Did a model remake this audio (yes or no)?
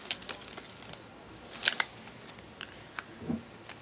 no